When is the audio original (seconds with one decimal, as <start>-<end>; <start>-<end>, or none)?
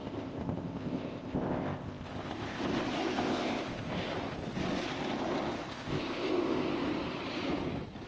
2.6-3.0; 4.1-5.7; 6.7-8.1